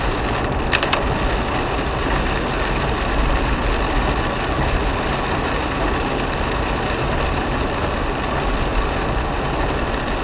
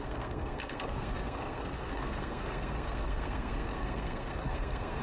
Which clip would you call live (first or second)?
first